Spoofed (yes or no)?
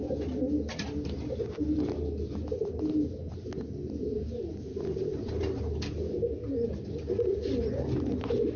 no